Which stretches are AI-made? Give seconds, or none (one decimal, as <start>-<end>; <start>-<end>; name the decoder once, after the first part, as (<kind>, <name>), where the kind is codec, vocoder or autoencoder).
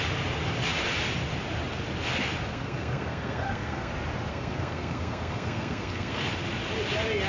2.5-3.9 (codec, SNAC); 4.3-6.3